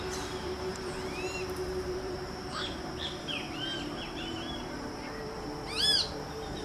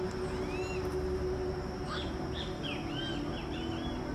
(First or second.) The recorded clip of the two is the second